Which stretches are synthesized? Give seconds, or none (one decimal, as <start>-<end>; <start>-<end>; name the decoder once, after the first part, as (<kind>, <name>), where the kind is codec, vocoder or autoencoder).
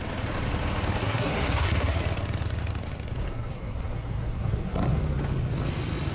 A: 1.0-2.0 (codec, SNAC); 3.2-5.0